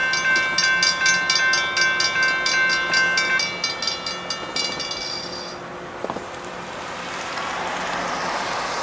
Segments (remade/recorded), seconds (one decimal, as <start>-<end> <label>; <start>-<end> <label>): 0.0-8.8 recorded